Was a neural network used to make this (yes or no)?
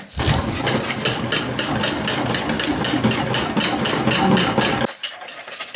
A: no